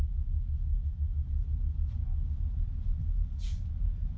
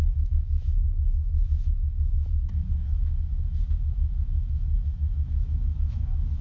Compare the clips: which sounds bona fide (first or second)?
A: first